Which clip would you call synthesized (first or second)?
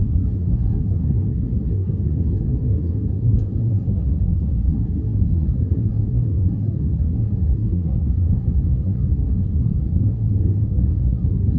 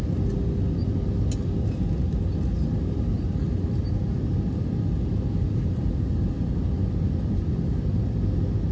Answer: first